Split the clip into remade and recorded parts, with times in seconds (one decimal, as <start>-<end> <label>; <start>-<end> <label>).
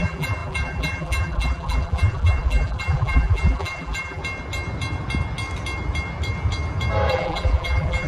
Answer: 0.0-4.2 remade; 4.2-7.1 recorded; 7.1-8.1 remade